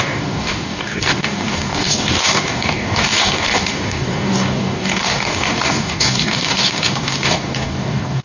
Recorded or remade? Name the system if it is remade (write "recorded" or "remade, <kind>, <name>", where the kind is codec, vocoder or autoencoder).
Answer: remade, codec, DAC